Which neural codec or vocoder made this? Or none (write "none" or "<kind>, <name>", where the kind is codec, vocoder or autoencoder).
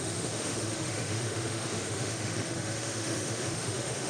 autoencoder, DAC-VAE